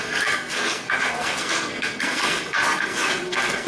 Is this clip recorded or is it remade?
remade